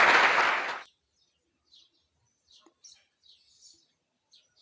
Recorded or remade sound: recorded